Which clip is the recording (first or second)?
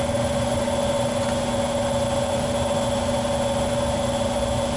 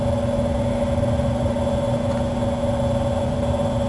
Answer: second